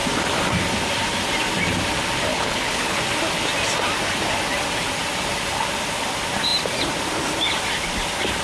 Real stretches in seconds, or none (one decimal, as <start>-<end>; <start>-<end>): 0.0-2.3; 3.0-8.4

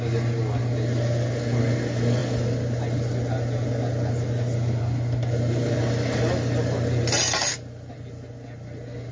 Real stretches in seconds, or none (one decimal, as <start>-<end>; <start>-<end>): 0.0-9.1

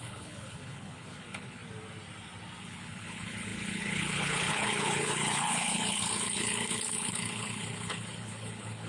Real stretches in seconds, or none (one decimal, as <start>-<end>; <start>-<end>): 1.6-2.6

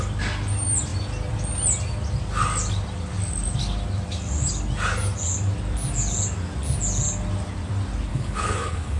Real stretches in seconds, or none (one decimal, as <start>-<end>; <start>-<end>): 0.0-8.1

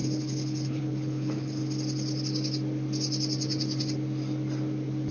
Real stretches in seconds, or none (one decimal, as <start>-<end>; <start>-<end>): 1.6-5.1

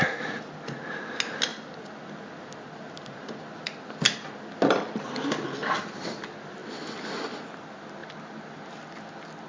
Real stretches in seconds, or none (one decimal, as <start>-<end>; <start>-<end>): 0.0-9.5

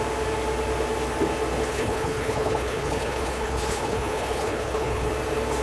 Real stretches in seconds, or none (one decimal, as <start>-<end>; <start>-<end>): 0.0-1.7; 5.1-5.6